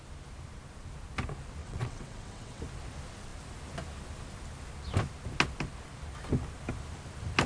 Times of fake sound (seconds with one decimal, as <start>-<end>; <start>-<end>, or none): 1.6-2.6